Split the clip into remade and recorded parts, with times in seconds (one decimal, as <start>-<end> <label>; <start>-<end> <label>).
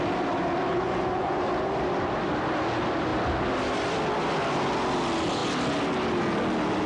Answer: 0.0-0.7 recorded; 0.7-1.4 remade; 1.4-6.9 recorded